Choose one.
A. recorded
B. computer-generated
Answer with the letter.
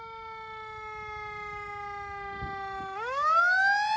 A